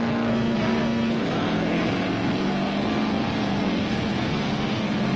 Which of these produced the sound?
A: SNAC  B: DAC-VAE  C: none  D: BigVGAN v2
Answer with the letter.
A